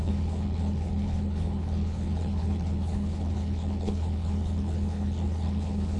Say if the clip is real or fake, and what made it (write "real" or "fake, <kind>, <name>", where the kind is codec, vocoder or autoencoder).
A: fake, codec, HILCodec